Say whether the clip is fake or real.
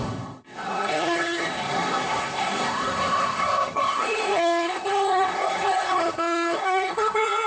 fake